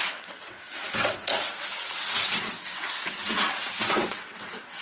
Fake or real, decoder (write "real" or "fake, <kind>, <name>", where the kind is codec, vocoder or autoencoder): fake, vocoder, WaveNeXt